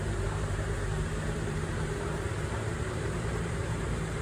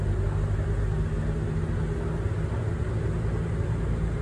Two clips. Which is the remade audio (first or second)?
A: first